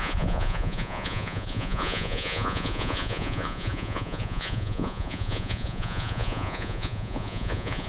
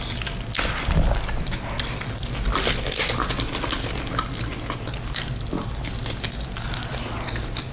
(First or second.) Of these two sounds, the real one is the second